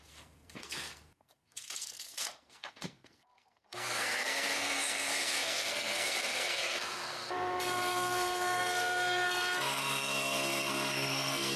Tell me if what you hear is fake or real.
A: fake